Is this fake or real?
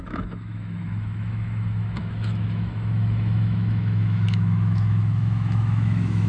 fake